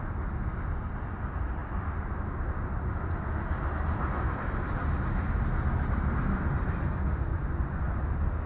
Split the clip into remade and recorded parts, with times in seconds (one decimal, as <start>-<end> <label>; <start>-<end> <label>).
0.0-7.3 recorded; 7.3-8.0 remade; 8.0-8.5 recorded